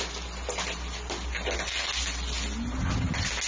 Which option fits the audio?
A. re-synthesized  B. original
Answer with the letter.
B